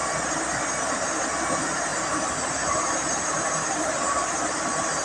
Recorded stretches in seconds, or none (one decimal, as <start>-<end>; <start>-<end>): 0.0-0.9